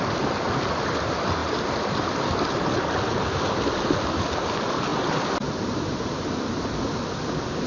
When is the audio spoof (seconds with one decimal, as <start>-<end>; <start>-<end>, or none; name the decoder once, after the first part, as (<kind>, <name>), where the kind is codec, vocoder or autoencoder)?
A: none